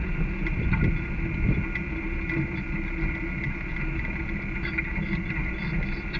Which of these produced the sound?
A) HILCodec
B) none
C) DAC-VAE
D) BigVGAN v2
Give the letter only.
B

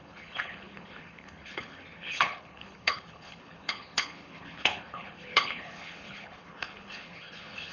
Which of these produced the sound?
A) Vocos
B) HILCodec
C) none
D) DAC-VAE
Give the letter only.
B